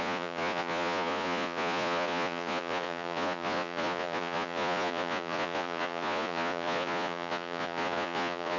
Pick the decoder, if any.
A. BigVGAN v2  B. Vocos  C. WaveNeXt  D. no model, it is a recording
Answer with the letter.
B